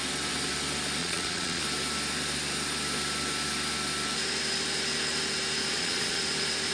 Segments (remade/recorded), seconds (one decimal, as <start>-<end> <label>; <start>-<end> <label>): 0.0-1.0 recorded; 1.0-1.6 remade; 1.6-5.7 recorded; 5.7-6.2 remade; 6.2-6.7 recorded